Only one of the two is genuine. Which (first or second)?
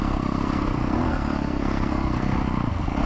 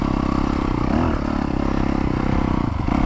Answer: second